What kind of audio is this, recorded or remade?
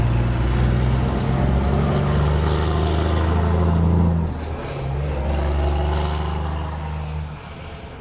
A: recorded